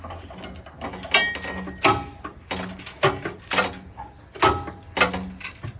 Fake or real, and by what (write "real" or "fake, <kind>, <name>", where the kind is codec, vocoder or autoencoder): real